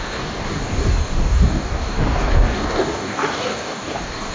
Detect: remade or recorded remade